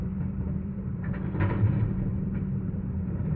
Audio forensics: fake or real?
fake